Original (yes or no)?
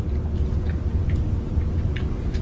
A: yes